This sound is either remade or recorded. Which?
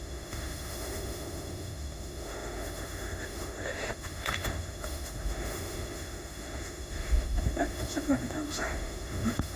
remade